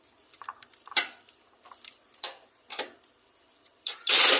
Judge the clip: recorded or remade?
remade